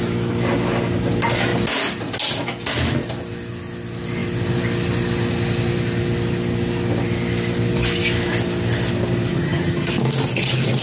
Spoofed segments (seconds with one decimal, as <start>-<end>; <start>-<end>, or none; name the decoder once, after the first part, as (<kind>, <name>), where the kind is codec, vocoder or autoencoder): 9.3-9.9 (vocoder, HiFi-GAN)